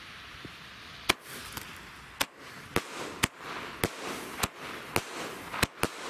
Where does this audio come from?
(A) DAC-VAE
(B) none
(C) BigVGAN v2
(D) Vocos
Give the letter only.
B